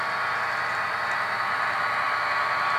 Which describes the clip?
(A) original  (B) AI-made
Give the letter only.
A